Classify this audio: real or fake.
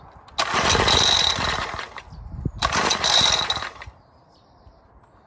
real